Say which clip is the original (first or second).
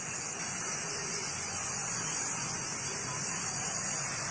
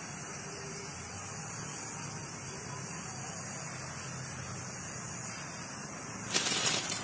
second